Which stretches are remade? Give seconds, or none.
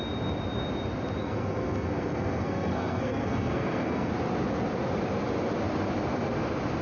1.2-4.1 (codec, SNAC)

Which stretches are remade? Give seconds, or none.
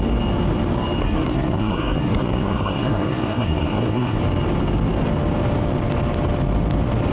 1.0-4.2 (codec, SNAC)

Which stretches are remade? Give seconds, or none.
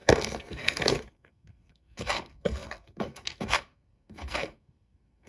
0.0-5.3 (codec, SNAC)